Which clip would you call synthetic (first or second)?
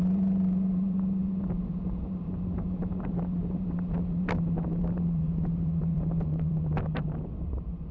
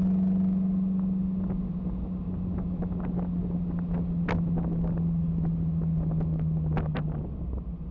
first